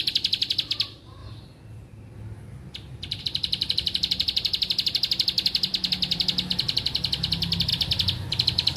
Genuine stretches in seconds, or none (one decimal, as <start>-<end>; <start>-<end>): 0.0-8.8